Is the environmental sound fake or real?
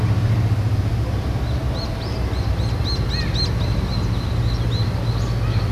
real